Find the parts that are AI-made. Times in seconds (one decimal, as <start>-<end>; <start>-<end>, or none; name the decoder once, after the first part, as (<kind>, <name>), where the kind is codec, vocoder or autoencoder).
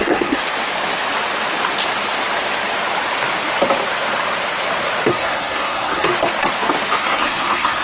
0.0-0.4 (codec, SNAC); 5.1-6.1; 7.0-7.8